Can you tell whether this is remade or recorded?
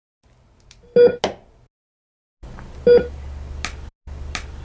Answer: recorded